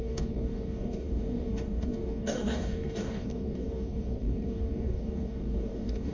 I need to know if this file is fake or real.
fake